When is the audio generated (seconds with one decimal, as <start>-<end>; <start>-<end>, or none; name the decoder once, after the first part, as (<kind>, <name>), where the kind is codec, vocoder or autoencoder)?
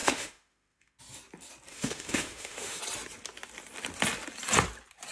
0.0-1.0 (autoencoder, DAC-VAE); 1.7-2.8